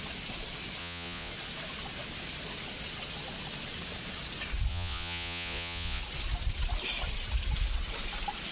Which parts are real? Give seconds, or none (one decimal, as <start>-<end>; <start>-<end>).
0.0-0.8; 1.3-4.7; 6.0-8.5